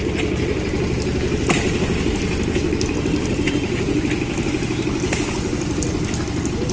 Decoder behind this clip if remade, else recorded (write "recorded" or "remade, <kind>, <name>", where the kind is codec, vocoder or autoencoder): recorded